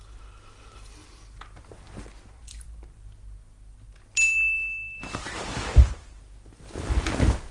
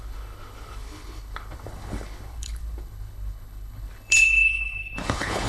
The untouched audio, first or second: first